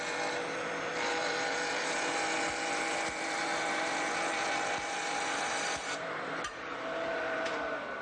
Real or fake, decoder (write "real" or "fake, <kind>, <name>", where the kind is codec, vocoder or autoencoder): fake, vocoder, BigVGAN v2